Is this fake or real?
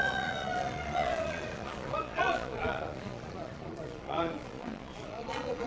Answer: fake